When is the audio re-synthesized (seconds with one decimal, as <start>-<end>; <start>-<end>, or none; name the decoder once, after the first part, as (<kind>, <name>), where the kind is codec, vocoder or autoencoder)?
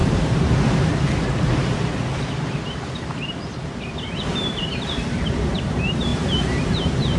3.8-7.2 (vocoder, BigVGAN v2)